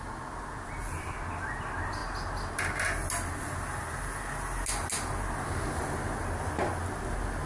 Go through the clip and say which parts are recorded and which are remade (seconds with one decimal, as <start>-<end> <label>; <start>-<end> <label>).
0.0-7.5 recorded